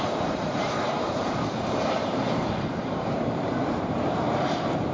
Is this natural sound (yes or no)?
no